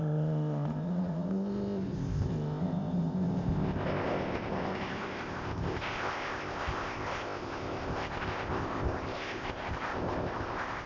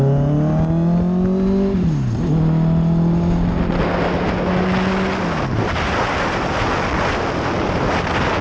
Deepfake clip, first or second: first